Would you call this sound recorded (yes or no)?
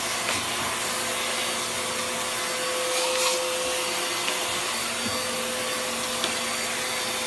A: yes